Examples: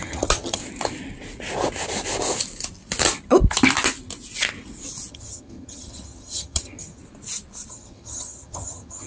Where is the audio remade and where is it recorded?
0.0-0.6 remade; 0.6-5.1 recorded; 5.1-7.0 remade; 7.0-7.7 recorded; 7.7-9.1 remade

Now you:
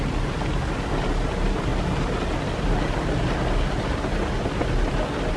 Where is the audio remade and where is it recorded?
0.0-5.4 recorded

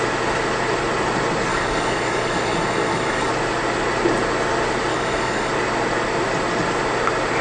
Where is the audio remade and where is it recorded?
0.0-1.5 recorded; 1.5-3.3 remade; 3.3-4.9 recorded; 4.9-5.5 remade; 5.5-7.4 recorded

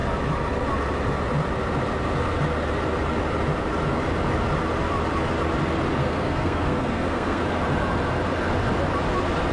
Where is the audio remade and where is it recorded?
0.0-6.0 recorded; 6.0-7.4 remade; 7.4-9.5 recorded

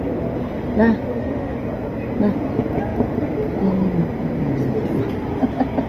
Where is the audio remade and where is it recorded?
0.0-1.1 recorded; 1.1-1.6 remade; 1.6-5.9 recorded